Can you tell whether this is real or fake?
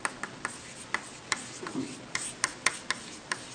real